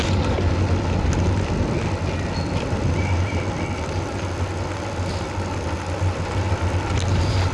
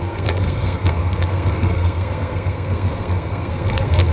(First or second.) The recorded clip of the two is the first